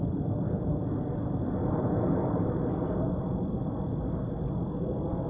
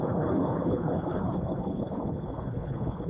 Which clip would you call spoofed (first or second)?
second